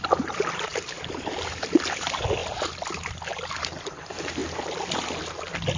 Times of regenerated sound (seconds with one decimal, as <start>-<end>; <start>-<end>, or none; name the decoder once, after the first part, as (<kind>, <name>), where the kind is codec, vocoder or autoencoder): 0.0-4.4 (vocoder, BigVGAN v2)